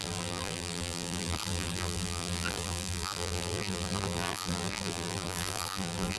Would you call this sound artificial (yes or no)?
yes